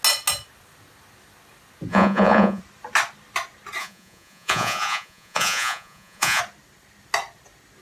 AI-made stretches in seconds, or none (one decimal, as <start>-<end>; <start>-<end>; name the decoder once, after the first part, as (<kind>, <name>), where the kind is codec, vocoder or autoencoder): 1.9-2.6 (vocoder, Vocos); 3.8-6.4